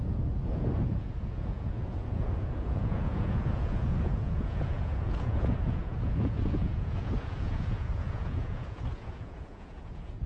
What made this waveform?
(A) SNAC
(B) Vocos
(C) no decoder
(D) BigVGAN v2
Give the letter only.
B